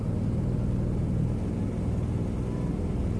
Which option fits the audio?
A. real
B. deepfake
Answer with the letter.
A